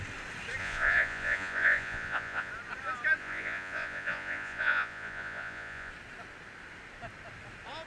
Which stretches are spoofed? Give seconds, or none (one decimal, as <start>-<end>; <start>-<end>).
0.6-2.5; 3.2-5.9